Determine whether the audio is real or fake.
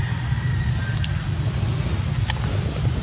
real